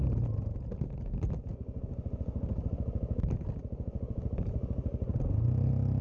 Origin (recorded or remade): recorded